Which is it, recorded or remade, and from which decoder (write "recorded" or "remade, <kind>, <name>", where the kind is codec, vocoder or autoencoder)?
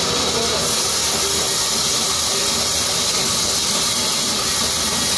recorded